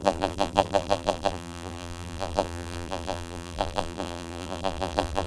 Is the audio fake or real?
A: fake